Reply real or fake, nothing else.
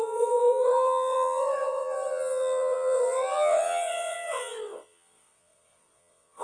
fake